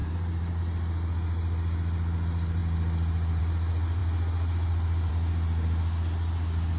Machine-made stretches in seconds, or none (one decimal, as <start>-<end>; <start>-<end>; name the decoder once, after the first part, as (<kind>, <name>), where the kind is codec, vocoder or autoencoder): 0.0-0.6 (vocoder, BigVGAN v2)